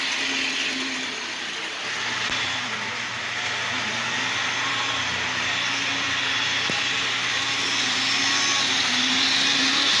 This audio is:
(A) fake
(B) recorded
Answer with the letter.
B